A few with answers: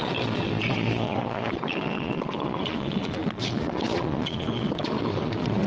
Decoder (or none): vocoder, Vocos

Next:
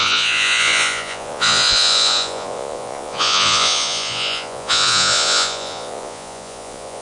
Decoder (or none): vocoder, Vocos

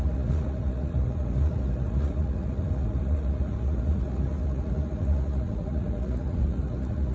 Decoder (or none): vocoder, Vocos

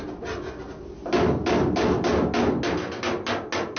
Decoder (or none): none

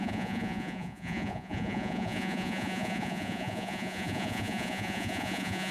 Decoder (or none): vocoder, Vocos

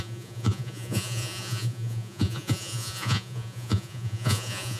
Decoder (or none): vocoder, Vocos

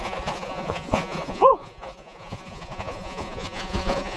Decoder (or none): vocoder, Vocos